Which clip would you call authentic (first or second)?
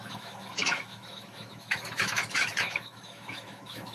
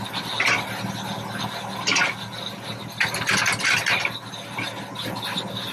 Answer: second